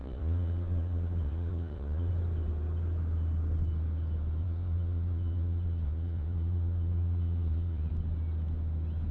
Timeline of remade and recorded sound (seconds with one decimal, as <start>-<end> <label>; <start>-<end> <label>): 0.0-2.1 remade; 2.1-4.4 recorded; 4.4-7.9 remade; 7.9-9.1 recorded